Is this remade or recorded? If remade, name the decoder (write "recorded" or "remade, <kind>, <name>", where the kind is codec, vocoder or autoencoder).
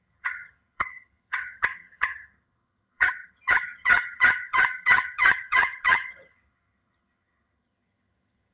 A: remade, vocoder, HiFi-GAN